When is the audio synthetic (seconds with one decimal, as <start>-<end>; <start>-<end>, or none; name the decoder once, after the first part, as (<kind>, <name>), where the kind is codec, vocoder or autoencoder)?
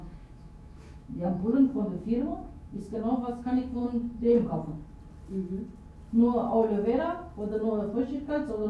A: 0.0-3.8 (autoencoder, DAC-VAE)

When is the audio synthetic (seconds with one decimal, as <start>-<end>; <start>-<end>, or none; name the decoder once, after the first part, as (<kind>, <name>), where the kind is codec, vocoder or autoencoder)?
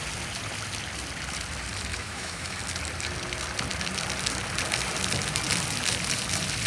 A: 1.9-2.6 (autoencoder, DAC-VAE)